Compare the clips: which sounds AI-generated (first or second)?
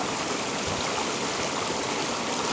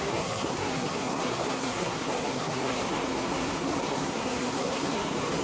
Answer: second